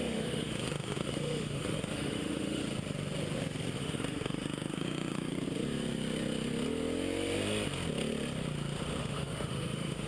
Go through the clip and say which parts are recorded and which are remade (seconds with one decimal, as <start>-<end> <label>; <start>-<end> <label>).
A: 0.0-2.6 remade; 2.6-3.8 recorded; 3.8-5.3 remade; 5.3-9.0 recorded; 9.0-10.1 remade